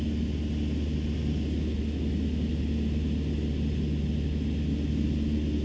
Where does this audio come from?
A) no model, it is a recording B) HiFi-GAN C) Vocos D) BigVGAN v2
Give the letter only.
A